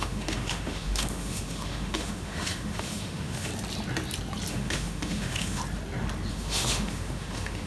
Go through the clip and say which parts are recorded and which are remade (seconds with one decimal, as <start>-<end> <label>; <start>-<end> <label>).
0.0-3.5 remade; 3.5-4.5 recorded; 4.5-5.6 remade; 5.6-6.3 recorded; 6.3-7.7 remade

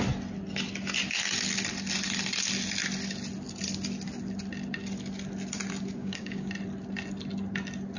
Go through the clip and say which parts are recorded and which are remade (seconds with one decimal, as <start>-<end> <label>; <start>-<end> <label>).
0.0-6.0 recorded; 6.0-6.5 remade; 6.5-8.0 recorded

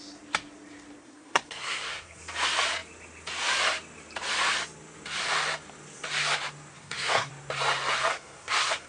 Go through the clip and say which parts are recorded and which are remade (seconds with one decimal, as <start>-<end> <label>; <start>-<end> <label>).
0.0-1.0 recorded; 1.0-2.2 remade; 2.2-6.7 recorded; 6.7-7.3 remade; 7.3-8.1 recorded; 8.1-8.9 remade

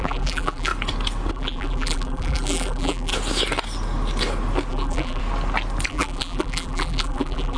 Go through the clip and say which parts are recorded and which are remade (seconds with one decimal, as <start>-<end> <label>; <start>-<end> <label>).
0.0-0.7 remade; 0.7-1.3 recorded; 1.3-3.1 remade; 3.1-4.7 recorded; 4.7-5.2 remade; 5.2-5.9 recorded; 5.9-7.6 remade